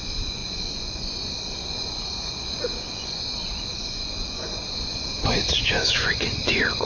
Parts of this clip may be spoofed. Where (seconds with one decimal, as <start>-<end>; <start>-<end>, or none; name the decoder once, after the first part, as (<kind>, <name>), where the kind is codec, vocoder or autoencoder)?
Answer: 0.0-6.9 (vocoder, Vocos)